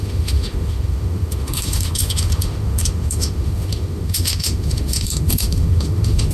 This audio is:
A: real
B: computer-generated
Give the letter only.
B